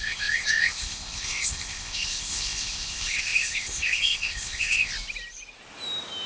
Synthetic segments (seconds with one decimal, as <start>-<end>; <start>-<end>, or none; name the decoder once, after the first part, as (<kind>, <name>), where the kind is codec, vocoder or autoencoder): 0.0-4.9 (codec, ZipCodec)